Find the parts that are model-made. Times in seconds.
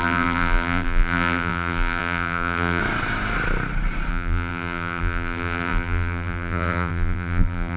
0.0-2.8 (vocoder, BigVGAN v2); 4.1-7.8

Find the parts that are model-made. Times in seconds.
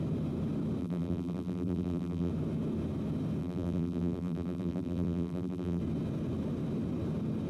0.8-2.3 (vocoder, BigVGAN v2); 3.4-5.8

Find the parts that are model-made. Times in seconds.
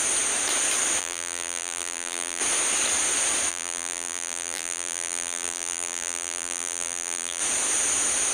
1.0-2.4 (vocoder, BigVGAN v2); 3.5-7.4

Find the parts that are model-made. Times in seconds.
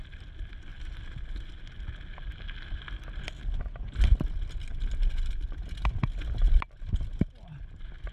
0.7-1.5 (vocoder, BigVGAN v2)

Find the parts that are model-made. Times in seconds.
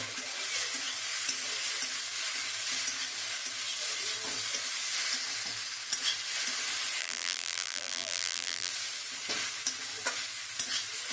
7.0-8.7 (vocoder, BigVGAN v2)